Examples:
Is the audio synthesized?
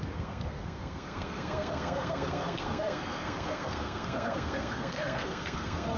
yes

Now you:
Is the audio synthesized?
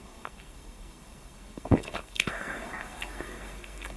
yes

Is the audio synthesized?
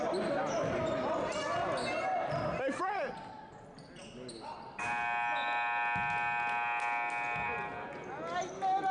no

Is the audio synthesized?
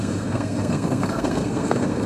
yes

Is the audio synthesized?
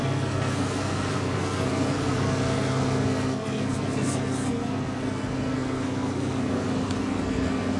yes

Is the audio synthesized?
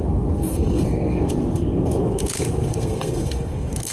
yes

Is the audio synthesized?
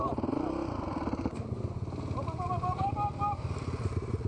no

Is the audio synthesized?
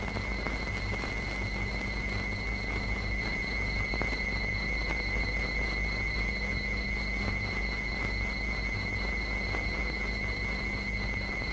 no